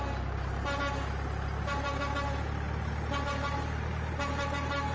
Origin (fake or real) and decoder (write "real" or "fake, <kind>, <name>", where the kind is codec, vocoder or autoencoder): real